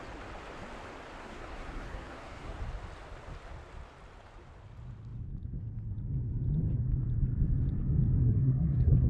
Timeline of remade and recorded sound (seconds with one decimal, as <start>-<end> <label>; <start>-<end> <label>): 0.0-1.2 recorded; 1.2-2.6 remade; 2.6-8.2 recorded; 8.2-9.1 remade